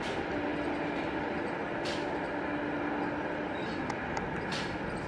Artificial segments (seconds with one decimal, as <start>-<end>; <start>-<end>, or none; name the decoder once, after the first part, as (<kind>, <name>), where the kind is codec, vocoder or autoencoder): none